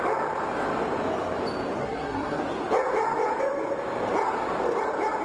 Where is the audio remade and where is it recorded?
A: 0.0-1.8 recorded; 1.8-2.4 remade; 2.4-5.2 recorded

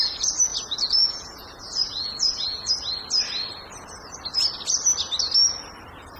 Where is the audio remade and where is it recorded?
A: 0.0-0.5 recorded; 0.5-2.7 remade; 2.7-6.2 recorded